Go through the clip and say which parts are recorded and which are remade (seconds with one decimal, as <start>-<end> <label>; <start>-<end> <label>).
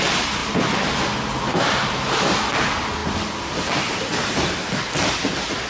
0.0-5.7 recorded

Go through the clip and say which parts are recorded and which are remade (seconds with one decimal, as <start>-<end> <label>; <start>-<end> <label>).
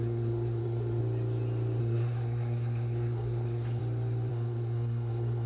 0.0-1.0 remade; 1.0-1.8 recorded; 1.8-3.8 remade; 3.8-4.3 recorded; 4.3-5.5 remade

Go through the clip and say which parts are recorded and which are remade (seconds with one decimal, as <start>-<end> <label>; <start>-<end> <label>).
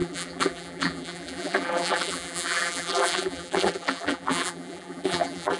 0.0-5.6 remade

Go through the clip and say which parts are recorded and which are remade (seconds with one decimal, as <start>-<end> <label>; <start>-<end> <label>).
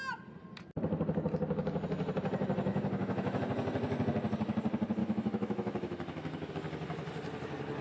0.0-2.7 recorded; 2.7-3.4 remade; 3.4-5.0 recorded; 5.0-6.5 remade; 6.5-7.8 recorded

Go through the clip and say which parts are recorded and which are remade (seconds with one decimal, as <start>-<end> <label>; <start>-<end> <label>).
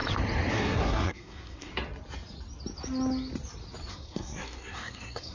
0.0-0.5 recorded; 0.5-1.7 remade; 1.7-3.9 recorded; 3.9-5.3 remade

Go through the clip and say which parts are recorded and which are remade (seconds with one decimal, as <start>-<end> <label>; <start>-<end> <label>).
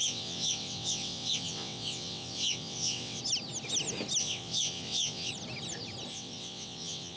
0.0-3.2 remade; 3.2-4.2 recorded; 4.2-5.3 remade; 5.3-6.1 recorded; 6.1-7.2 remade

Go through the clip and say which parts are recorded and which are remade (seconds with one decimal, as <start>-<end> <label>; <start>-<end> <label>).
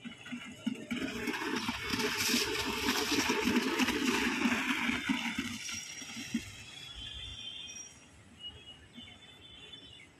0.0-1.9 recorded; 1.9-3.2 remade; 3.2-5.1 recorded; 5.1-6.3 remade; 6.3-10.2 recorded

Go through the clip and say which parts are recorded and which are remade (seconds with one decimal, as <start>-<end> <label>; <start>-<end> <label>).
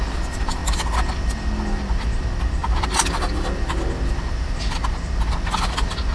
0.0-6.1 recorded